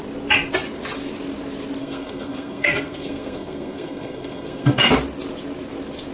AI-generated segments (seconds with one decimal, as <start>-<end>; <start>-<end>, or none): 1.8-4.8